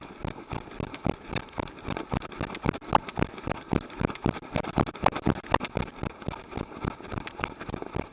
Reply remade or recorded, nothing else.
recorded